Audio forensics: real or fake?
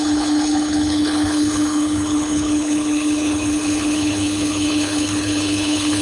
fake